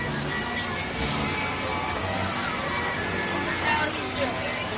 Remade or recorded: recorded